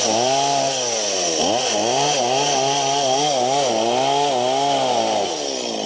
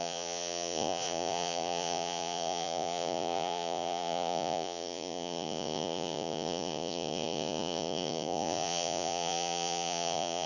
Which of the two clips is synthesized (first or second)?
second